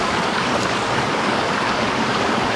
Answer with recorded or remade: remade